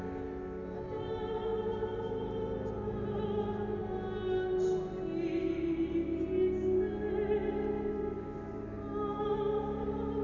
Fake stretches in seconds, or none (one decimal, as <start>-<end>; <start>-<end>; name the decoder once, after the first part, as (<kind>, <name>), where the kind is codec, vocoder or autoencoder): none